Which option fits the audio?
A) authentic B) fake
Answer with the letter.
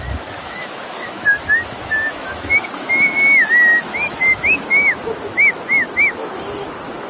B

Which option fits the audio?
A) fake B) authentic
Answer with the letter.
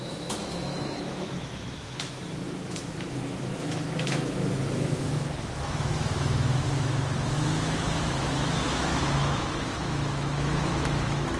A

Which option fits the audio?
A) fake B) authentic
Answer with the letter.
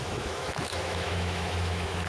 A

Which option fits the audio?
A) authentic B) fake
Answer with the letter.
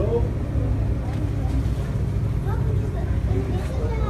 A